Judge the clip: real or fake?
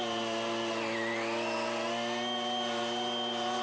real